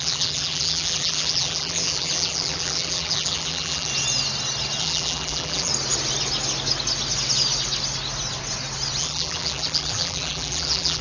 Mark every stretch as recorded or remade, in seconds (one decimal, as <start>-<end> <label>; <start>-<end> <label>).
0.0-3.9 remade; 3.9-4.8 recorded; 4.8-5.7 remade; 5.7-9.0 recorded; 9.0-11.0 remade